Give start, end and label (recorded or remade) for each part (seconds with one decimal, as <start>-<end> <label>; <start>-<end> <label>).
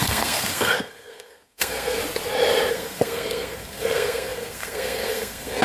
0.0-2.0 remade; 2.0-2.7 recorded; 2.7-5.6 remade